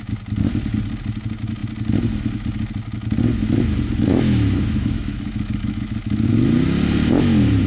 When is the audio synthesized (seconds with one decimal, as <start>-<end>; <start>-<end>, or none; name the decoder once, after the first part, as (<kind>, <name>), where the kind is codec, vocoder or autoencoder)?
4.1-6.3 (autoencoder, DAC-VAE)